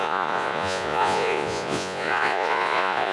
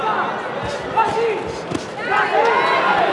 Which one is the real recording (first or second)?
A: second